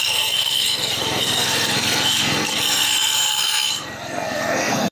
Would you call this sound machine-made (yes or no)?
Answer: yes